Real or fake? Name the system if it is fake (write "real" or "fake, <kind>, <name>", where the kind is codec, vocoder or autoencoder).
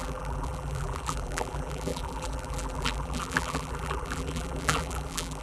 fake, vocoder, BigVGAN v2